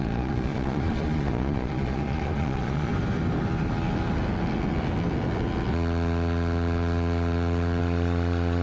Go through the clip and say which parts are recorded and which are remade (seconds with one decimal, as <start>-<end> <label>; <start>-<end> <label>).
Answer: 0.0-2.9 remade; 2.9-7.8 recorded; 7.8-8.6 remade